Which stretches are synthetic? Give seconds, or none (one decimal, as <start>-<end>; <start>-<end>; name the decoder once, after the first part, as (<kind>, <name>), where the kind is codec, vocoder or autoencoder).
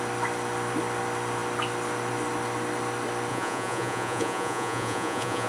3.3-5.5 (vocoder, Vocos)